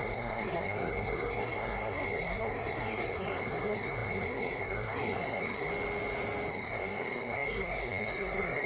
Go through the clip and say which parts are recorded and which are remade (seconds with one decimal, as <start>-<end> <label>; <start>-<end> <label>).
0.0-5.7 remade; 5.7-6.5 recorded; 6.5-8.7 remade